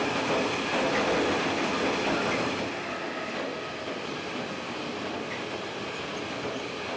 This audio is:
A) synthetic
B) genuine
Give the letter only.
B